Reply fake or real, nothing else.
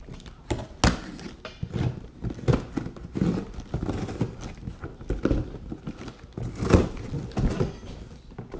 real